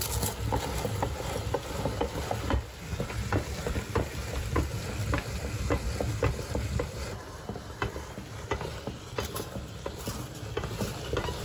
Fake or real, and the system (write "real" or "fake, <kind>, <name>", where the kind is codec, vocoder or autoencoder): real